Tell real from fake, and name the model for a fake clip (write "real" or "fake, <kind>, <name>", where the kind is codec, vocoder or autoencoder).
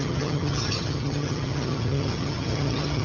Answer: fake, vocoder, HiFi-GAN